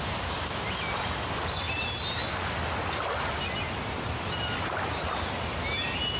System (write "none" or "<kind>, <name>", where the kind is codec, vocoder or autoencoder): none